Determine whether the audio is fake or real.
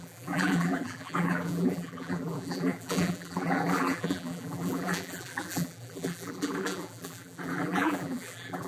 fake